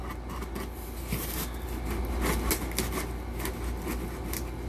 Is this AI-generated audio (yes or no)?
no